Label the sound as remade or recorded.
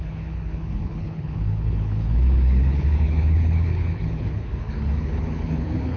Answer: remade